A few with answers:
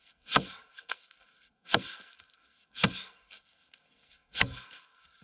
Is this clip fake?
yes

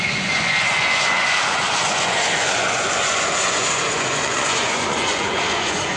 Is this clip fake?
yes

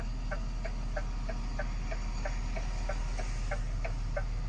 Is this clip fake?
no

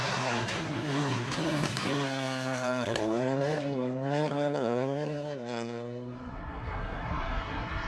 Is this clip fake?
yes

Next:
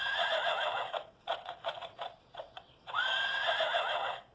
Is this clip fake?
yes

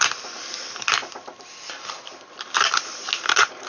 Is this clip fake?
no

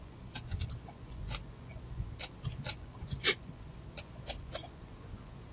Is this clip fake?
yes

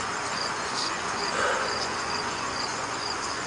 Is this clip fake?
yes